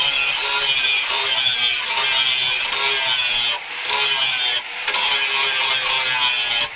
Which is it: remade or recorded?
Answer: recorded